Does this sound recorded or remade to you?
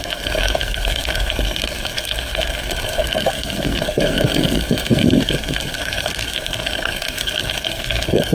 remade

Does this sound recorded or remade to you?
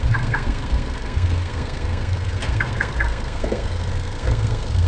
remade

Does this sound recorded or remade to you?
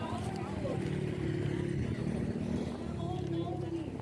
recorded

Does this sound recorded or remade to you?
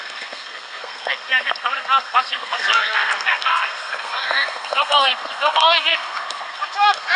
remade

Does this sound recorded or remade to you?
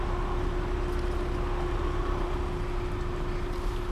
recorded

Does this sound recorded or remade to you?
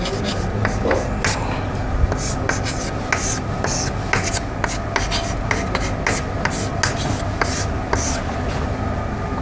recorded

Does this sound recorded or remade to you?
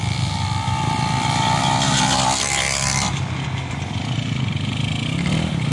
recorded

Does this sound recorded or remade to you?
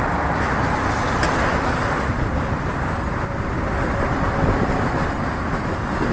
recorded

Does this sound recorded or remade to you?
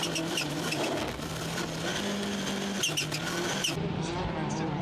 recorded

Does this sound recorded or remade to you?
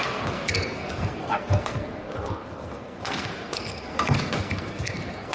remade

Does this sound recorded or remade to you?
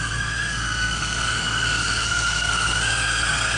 remade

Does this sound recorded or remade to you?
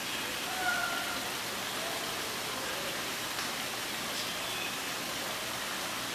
recorded